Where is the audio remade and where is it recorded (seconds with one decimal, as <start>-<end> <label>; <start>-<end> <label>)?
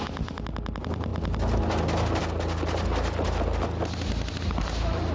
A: 0.0-5.1 recorded